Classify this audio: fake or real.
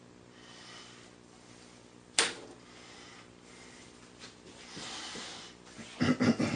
real